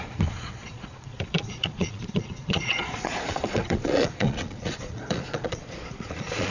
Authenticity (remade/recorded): remade